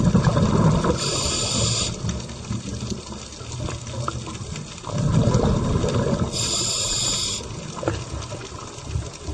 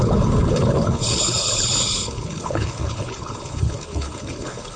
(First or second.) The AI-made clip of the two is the second